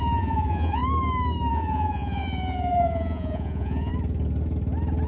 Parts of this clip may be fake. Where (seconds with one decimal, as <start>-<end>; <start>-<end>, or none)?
0.0-0.8; 1.5-3.9